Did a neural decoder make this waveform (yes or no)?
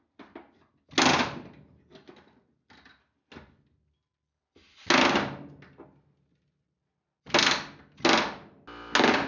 no